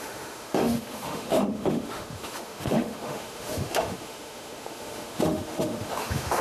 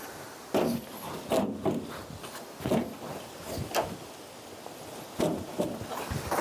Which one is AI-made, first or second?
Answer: first